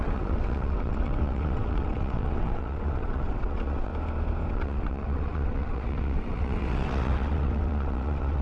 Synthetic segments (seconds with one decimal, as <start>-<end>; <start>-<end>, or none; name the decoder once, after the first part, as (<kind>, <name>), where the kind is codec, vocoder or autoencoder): 0.0-3.9 (vocoder, WaveNeXt); 4.5-8.4